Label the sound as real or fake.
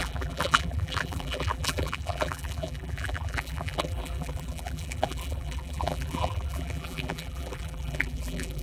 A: fake